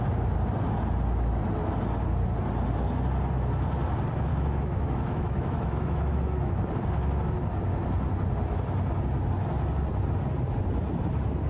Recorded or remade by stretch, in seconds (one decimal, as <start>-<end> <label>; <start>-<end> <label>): 0.0-4.3 recorded; 4.3-6.6 remade; 6.6-11.5 recorded